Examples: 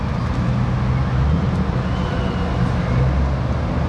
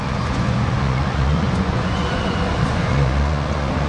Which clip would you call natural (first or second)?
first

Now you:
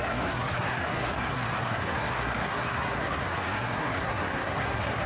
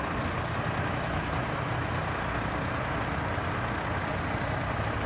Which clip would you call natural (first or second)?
second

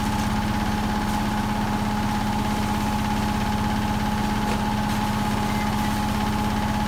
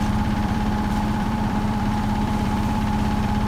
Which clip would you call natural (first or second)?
first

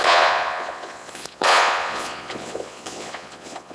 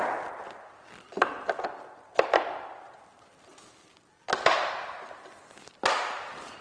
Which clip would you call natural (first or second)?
second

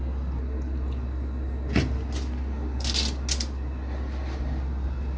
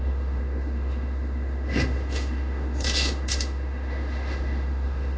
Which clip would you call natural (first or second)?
first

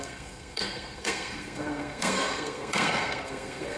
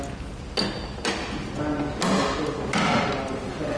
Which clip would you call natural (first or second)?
second